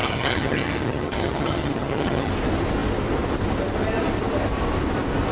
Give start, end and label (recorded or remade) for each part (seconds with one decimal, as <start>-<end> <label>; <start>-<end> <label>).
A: 0.0-2.3 remade; 2.3-5.3 recorded